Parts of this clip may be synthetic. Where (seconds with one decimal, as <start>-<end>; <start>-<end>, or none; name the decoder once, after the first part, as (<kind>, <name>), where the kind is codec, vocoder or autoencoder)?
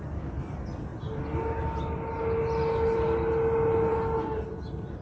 none